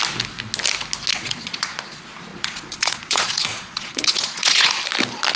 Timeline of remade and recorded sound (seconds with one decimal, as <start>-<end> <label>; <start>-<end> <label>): 0.0-1.1 recorded; 1.1-1.7 remade; 1.7-2.3 recorded; 2.3-4.7 remade; 4.7-5.4 recorded